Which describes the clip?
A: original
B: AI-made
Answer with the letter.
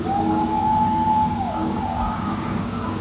B